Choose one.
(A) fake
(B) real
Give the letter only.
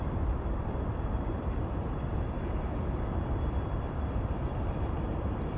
A